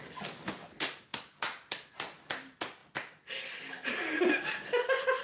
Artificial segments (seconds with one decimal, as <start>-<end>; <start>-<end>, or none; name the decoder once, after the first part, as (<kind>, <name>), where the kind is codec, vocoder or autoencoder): none